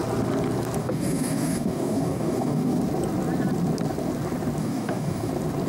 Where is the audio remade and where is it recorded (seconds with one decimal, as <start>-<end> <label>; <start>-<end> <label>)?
0.0-0.8 recorded; 0.8-2.8 remade; 2.8-4.6 recorded; 4.6-5.3 remade; 5.3-5.7 recorded